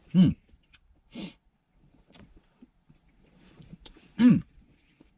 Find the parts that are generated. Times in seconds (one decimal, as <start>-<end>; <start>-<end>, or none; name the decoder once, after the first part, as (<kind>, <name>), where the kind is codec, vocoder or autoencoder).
0.0-5.2 (vocoder, Vocos)